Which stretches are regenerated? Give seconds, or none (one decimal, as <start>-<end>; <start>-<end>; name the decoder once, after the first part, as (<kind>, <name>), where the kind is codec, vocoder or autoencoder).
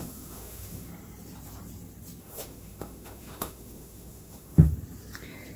0.0-0.9 (autoencoder, DAC-VAE); 2.2-4.7